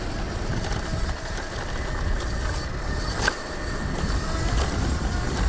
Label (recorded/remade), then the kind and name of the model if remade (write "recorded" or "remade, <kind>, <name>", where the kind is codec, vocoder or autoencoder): recorded